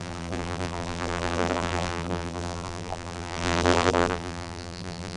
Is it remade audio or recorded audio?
remade